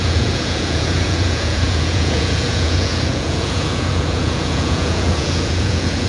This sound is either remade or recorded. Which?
remade